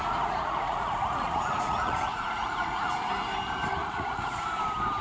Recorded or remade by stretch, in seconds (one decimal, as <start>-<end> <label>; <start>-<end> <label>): 0.0-2.9 remade; 2.9-3.8 recorded; 3.8-4.4 remade; 4.4-5.0 recorded